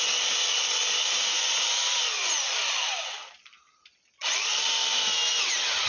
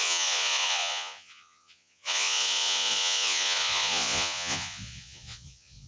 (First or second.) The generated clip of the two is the second